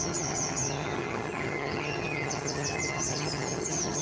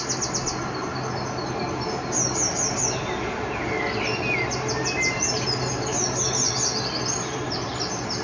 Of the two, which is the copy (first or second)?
first